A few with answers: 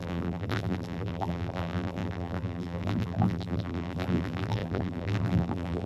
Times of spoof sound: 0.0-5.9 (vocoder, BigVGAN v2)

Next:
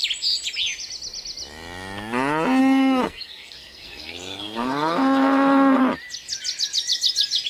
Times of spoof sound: 2.6-5.8 (codec, SNAC)

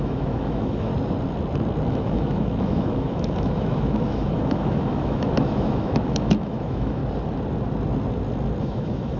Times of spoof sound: 0.0-0.9 (autoencoder, DAC-VAE); 1.9-7.0; 8.6-9.2

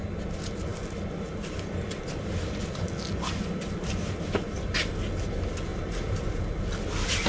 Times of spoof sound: 5.7-6.4 (vocoder, BigVGAN v2)

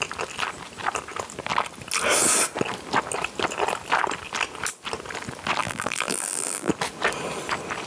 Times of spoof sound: 5.6-6.7 (vocoder, BigVGAN v2)

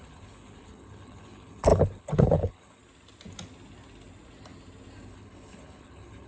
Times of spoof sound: 0.0-2.8 (codec, HILCodec); 5.1-6.3